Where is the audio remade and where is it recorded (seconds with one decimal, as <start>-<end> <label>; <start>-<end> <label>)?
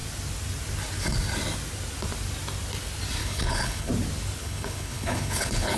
0.0-3.2 recorded; 3.2-3.9 remade; 3.9-4.4 recorded; 4.4-5.8 remade